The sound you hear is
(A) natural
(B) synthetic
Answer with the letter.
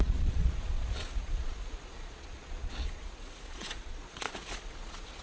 B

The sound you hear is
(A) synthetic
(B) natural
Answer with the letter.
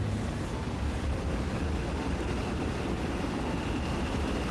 B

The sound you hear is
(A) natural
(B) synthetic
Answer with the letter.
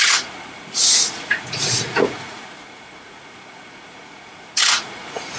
B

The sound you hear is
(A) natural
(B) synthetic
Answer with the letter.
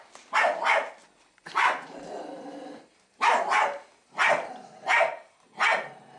A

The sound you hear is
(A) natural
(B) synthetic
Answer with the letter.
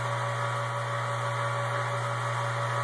A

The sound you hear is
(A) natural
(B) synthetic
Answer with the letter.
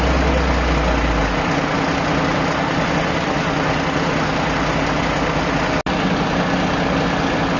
A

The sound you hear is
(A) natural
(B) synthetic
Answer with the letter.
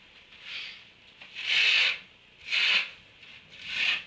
A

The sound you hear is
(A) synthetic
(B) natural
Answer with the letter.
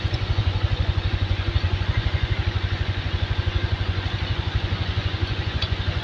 A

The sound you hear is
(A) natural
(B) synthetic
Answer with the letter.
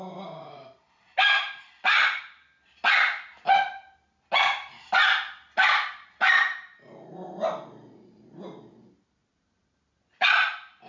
A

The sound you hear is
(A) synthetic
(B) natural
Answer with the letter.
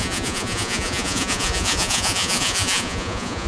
A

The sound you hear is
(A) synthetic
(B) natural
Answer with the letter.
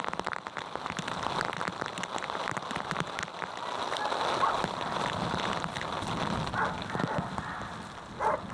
B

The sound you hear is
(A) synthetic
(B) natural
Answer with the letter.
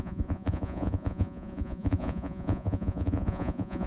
A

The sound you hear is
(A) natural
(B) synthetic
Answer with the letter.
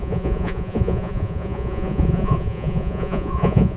B